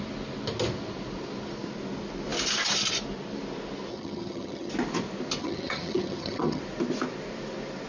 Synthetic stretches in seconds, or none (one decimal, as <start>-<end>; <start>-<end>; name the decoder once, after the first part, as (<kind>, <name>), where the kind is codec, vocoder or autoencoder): 3.9-4.7 (vocoder, HiFi-GAN); 5.4-6.6